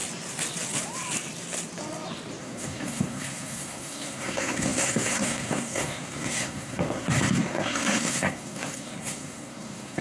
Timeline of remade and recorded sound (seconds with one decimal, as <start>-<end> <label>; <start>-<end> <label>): 0.0-2.4 recorded; 2.4-10.0 remade